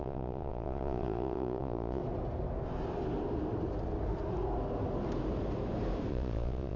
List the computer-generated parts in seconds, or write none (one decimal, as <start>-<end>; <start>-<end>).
0.0-2.0; 6.1-6.8